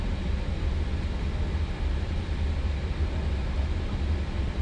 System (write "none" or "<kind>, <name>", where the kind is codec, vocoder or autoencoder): none